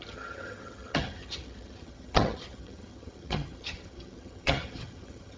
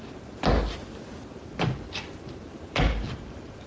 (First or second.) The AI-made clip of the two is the first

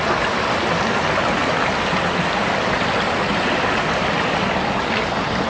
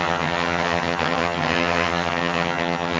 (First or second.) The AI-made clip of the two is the second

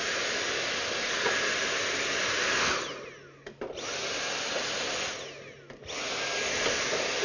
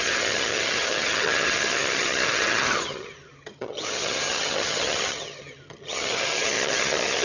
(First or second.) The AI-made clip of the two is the second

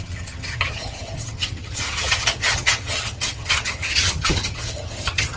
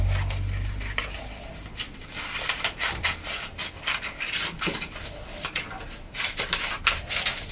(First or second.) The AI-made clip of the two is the first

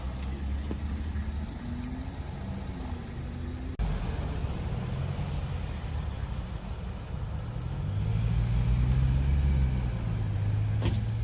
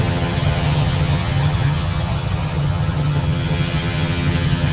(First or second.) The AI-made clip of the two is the second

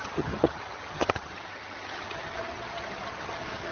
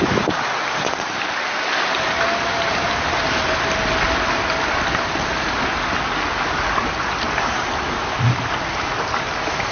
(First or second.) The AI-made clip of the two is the first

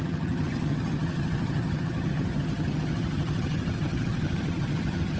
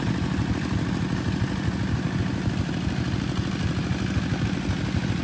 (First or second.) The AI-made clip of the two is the first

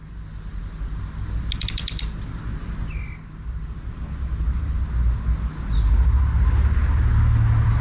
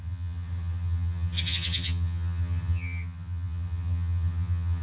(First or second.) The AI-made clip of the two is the second